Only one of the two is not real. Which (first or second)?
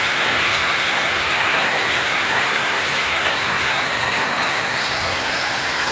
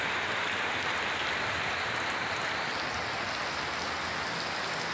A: first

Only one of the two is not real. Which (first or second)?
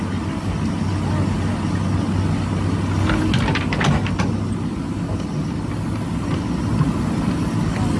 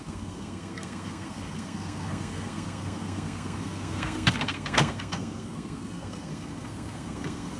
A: second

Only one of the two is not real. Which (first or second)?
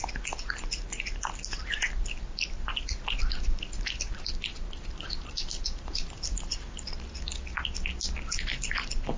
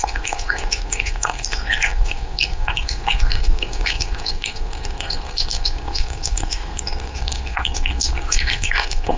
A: second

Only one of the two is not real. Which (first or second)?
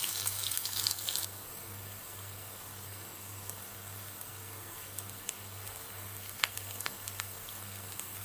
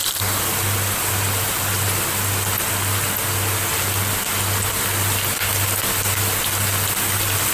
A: first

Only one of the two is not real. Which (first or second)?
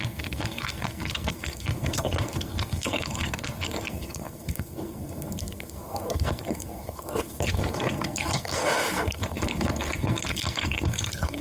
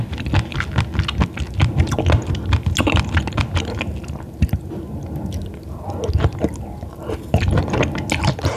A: first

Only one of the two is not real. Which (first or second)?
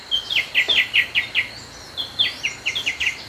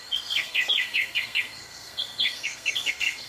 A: second